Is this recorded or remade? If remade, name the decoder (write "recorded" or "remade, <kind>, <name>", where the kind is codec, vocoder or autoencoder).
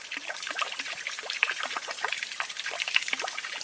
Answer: remade, vocoder, BigVGAN v2